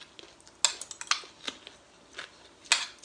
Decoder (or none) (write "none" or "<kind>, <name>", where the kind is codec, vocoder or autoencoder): none